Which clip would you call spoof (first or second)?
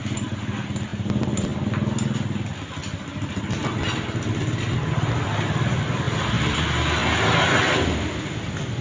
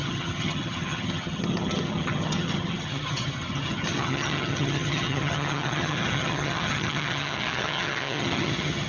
second